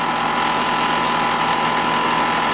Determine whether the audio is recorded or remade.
recorded